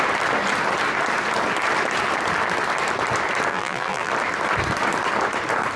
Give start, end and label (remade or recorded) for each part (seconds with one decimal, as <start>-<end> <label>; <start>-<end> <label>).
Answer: 0.0-3.5 recorded; 3.5-4.1 remade; 4.1-5.8 recorded